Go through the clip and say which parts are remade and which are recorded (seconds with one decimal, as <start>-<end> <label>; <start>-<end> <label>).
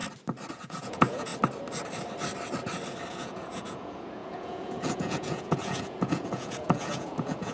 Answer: 0.0-0.5 recorded; 0.5-1.3 remade; 1.3-3.1 recorded; 3.1-7.5 remade